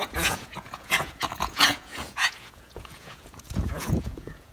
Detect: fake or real fake